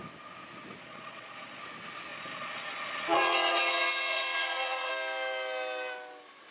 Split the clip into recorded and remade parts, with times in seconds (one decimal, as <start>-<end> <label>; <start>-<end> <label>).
0.0-0.8 recorded; 0.8-1.6 remade; 1.6-2.1 recorded; 2.1-4.9 remade; 4.9-6.5 recorded